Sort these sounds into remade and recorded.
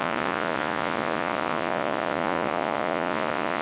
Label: remade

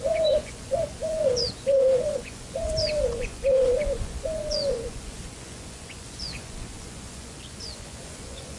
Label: remade